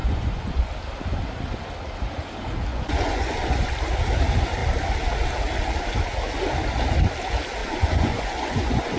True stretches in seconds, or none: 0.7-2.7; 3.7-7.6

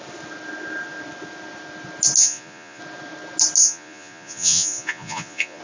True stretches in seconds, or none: 0.0-2.2; 2.8-3.6

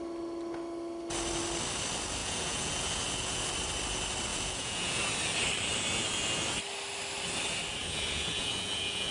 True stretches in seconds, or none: 0.0-2.2; 3.5-4.3; 5.0-7.8

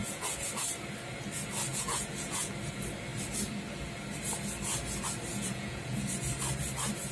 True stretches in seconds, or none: 0.5-1.7; 2.5-5.3; 6.3-7.1

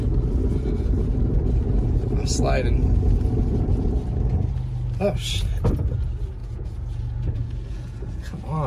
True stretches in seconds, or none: 0.0-6.4

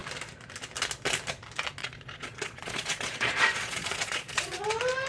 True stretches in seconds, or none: 0.0-1.8; 4.6-5.1

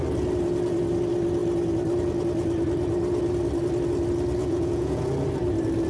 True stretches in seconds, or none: 0.0-4.4; 5.0-5.9